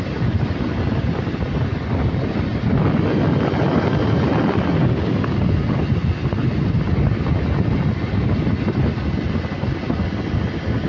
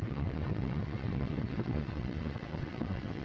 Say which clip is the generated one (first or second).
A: second